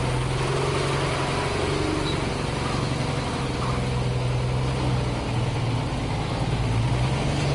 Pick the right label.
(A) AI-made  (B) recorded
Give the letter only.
B